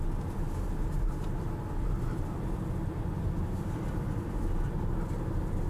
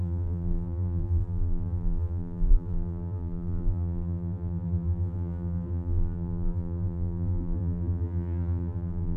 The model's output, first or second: second